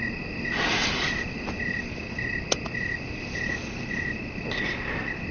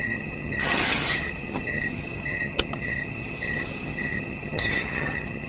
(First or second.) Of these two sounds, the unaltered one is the first